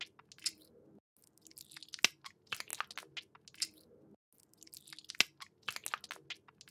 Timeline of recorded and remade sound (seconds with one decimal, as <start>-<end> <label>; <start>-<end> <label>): 0.0-6.7 recorded